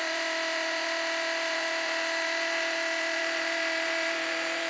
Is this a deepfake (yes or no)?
yes